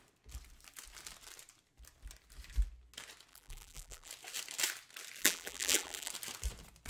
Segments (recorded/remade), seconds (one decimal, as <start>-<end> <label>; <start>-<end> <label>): 0.0-3.3 recorded; 3.3-4.1 remade; 4.1-5.2 recorded; 5.2-6.1 remade; 6.1-6.9 recorded